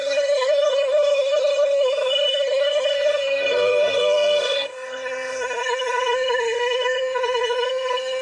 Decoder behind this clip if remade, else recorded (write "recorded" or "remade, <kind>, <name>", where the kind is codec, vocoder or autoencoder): remade, codec, SNAC